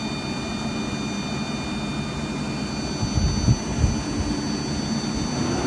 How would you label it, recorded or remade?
recorded